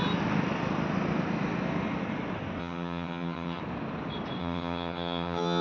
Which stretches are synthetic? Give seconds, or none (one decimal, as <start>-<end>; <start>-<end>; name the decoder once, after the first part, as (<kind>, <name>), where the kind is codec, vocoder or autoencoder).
2.6-3.6 (vocoder, HiFi-GAN); 4.4-5.6

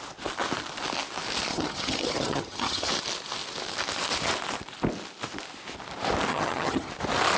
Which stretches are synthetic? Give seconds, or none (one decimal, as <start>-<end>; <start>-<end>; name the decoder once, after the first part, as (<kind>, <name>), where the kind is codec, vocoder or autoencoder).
1.5-2.9 (vocoder, HiFi-GAN); 6.3-6.9